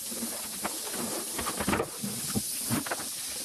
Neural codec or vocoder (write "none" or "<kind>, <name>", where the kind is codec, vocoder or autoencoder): vocoder, BigVGAN v2